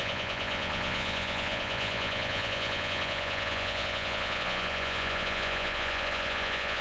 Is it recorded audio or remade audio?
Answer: remade